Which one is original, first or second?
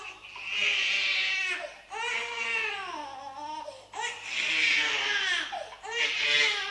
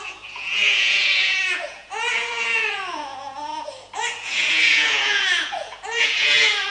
first